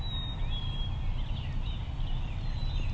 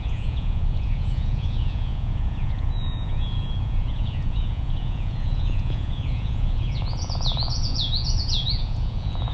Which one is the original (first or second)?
first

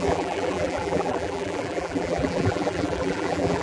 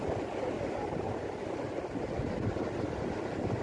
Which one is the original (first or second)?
second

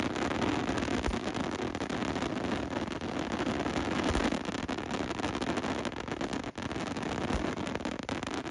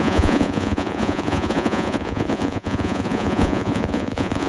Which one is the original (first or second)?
first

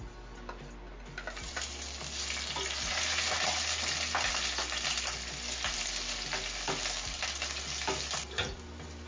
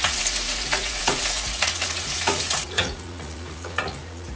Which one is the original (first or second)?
first